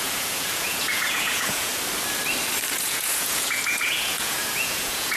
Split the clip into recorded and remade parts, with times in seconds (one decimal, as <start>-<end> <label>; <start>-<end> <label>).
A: 0.0-1.7 remade; 1.7-2.7 recorded; 2.7-5.2 remade